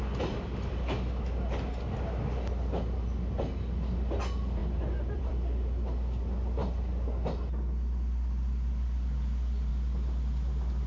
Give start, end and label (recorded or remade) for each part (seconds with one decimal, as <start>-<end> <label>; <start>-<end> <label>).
0.0-4.6 recorded; 4.6-5.3 remade; 5.3-10.9 recorded